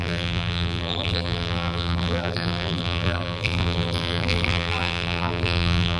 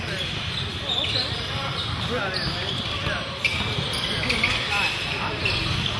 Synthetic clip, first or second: first